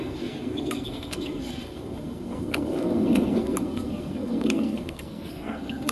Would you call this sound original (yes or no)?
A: no